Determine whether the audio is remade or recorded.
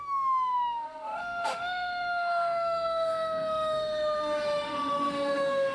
remade